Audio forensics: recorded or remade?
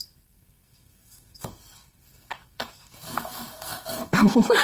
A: remade